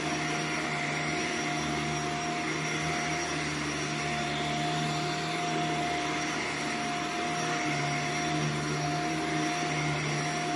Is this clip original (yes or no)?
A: yes